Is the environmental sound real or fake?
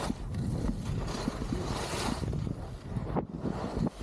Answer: real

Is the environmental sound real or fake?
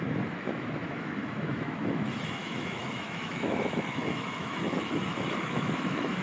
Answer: fake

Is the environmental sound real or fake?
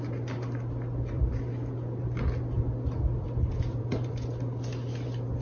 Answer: real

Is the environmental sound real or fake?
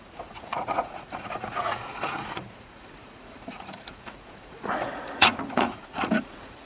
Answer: fake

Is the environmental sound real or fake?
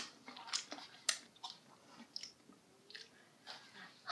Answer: real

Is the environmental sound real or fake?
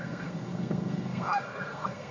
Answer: fake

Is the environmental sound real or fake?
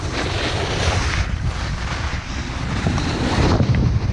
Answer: fake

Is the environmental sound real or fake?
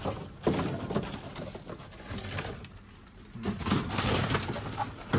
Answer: real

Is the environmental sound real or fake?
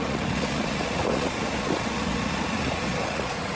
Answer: fake